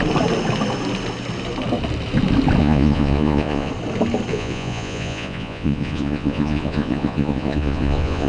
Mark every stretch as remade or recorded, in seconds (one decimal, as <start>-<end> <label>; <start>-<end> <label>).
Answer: 0.0-2.6 recorded; 2.6-3.7 remade; 3.7-4.3 recorded; 4.3-8.3 remade